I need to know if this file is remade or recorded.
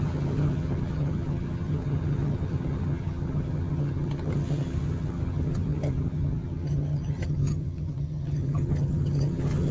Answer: remade